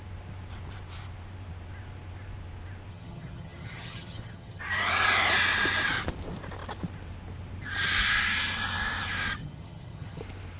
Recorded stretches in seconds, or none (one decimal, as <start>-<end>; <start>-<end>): 0.0-2.9; 4.6-9.4; 10.2-10.6